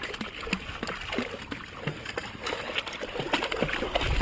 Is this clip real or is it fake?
real